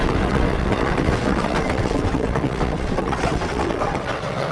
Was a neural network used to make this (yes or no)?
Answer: yes